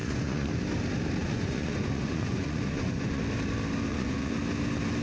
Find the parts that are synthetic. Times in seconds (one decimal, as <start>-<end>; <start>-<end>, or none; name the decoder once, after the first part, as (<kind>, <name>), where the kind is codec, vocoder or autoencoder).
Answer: 0.0-0.5 (vocoder, Vocos); 1.2-3.2; 3.9-4.4